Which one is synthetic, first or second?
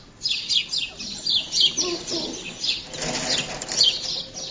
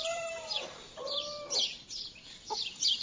second